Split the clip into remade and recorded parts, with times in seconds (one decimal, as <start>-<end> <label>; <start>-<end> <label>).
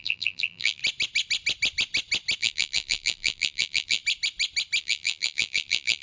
0.0-0.8 remade; 0.8-2.4 recorded; 2.4-4.0 remade; 4.0-4.8 recorded; 4.8-6.0 remade